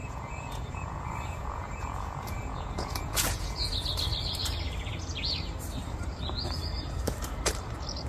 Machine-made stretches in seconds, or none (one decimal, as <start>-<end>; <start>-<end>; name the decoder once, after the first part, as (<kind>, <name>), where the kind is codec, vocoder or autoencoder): 0.0-3.7 (vocoder, Vocos)